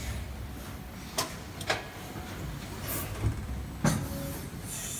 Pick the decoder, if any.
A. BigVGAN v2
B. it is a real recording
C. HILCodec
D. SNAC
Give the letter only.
B